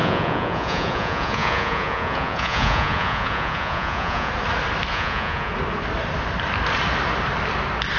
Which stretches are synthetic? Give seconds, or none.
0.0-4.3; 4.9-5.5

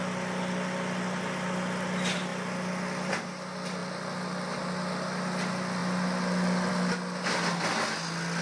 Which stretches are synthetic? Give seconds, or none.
none

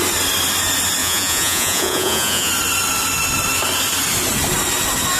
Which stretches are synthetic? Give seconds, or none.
1.0-2.5